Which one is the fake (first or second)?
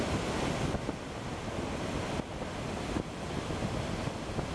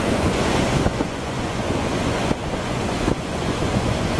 second